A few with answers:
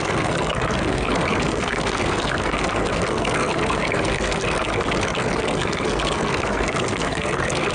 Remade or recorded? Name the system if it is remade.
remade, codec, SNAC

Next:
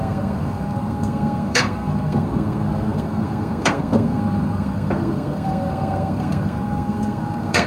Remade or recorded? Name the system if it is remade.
remade, codec, SNAC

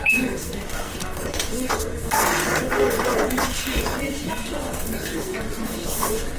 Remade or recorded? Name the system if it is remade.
remade, codec, SNAC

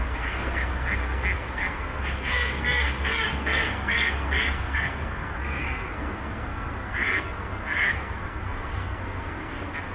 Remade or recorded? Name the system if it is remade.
remade, codec, SNAC